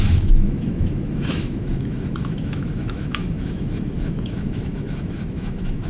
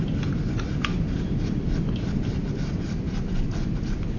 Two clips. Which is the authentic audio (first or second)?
second